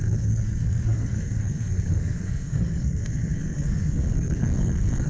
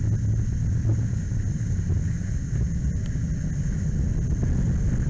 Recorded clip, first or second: second